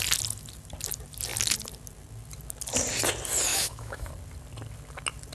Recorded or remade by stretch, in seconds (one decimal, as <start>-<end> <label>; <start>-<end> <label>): 0.0-3.5 recorded; 3.5-4.1 remade; 4.1-5.3 recorded